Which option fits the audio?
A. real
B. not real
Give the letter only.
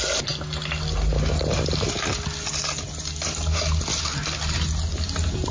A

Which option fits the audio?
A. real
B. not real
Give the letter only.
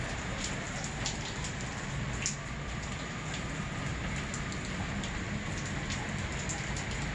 A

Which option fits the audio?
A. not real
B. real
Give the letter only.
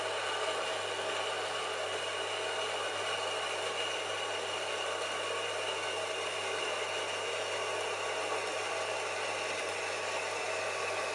B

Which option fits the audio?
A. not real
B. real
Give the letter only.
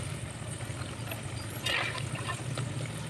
B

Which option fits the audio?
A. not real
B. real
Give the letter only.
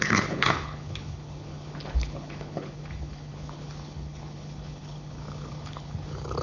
A